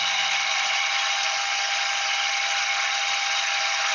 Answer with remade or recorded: recorded